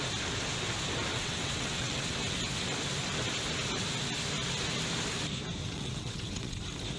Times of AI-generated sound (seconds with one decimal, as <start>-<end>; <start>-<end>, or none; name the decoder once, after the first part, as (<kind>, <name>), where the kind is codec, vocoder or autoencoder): 1.1-2.2 (vocoder, WaveNeXt); 5.6-6.6